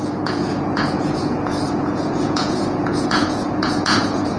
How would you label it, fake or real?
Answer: fake